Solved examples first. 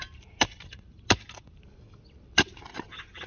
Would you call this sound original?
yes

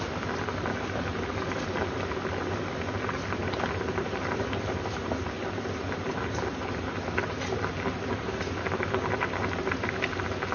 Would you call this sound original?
yes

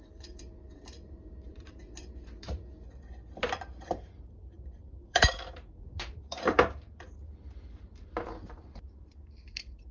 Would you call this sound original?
no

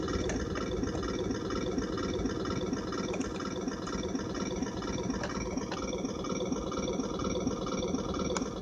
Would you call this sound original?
yes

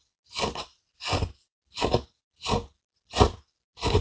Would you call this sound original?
yes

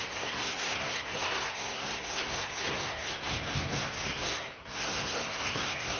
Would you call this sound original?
no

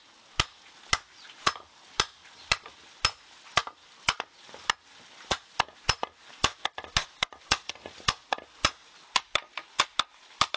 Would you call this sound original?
yes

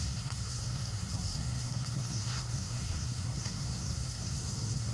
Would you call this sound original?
no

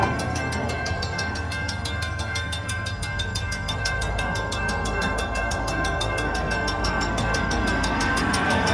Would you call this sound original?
no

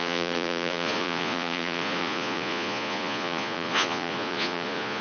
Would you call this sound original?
no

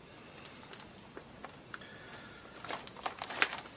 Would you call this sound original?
yes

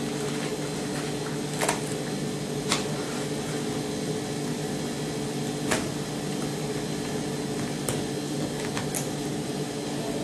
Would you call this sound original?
yes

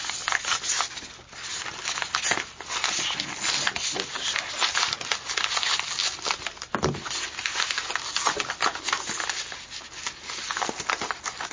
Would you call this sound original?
yes